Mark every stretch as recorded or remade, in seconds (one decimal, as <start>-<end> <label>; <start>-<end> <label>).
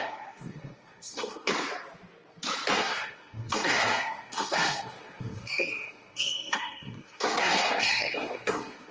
0.0-1.5 remade; 1.5-2.7 recorded; 2.7-8.9 remade